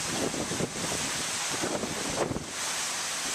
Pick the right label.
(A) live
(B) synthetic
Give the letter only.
A